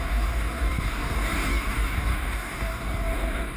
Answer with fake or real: fake